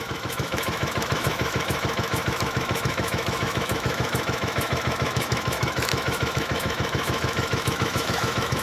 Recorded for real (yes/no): no